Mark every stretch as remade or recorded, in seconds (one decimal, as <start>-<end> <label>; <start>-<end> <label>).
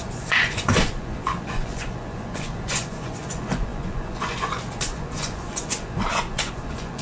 0.0-7.0 remade